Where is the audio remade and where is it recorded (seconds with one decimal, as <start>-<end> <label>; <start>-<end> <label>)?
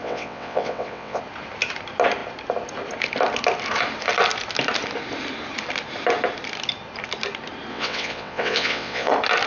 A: 0.0-1.2 remade; 1.2-7.7 recorded; 7.7-9.1 remade; 9.1-9.5 recorded